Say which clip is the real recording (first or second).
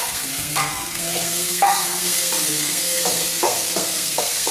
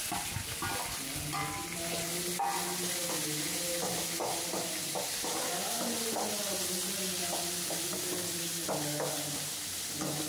second